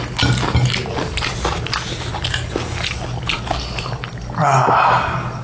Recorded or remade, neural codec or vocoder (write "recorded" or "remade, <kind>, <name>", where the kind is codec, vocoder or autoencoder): recorded